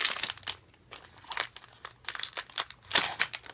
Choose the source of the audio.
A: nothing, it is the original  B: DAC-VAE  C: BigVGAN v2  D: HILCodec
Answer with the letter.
A